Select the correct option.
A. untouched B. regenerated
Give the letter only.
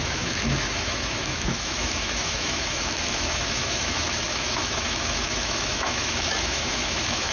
B